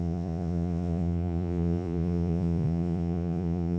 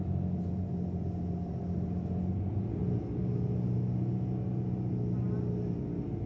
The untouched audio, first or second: second